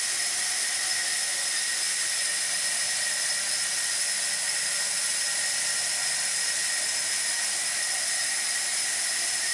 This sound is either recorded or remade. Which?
recorded